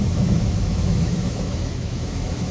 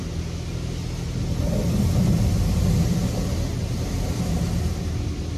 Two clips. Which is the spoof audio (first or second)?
first